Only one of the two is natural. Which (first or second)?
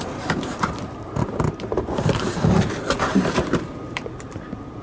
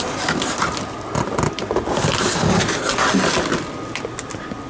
second